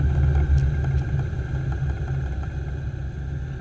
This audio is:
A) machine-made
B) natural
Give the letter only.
B